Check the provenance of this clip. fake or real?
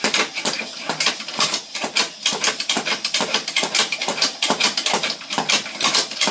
real